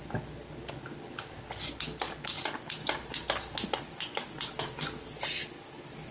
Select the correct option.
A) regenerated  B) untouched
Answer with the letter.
B